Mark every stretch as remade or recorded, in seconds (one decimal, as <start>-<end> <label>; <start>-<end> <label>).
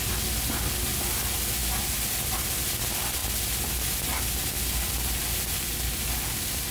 0.0-6.7 recorded